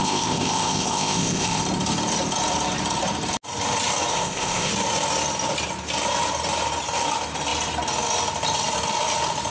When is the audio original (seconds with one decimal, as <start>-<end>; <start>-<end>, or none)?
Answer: 1.6-4.1; 4.7-9.5